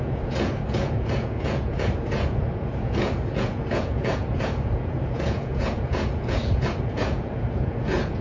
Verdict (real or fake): fake